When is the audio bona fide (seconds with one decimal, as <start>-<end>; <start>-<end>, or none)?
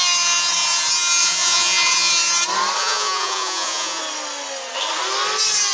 0.0-1.2; 2.1-2.8; 4.0-5.7